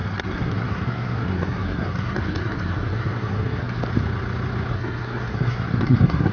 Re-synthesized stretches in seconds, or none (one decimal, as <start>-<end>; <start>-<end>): 0.0-3.8; 4.7-6.3